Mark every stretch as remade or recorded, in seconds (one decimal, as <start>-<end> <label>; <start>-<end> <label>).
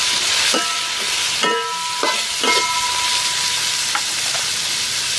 0.0-5.2 recorded